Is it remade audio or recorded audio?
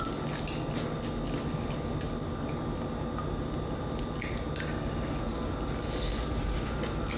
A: recorded